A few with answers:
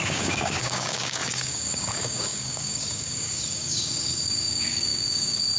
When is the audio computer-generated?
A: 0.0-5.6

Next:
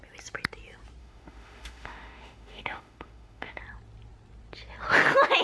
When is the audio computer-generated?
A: 1.0-3.6